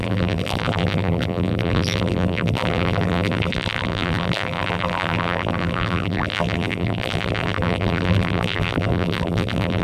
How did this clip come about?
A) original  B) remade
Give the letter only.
B